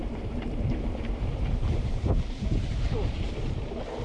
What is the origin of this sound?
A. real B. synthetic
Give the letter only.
B